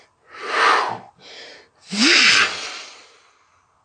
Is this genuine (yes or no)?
yes